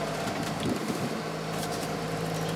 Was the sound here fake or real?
fake